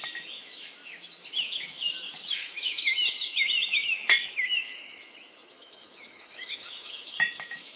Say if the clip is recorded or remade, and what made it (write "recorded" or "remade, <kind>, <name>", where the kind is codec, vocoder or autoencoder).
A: remade, autoencoder, DAC-VAE